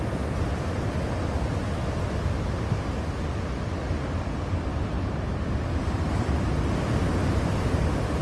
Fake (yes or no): no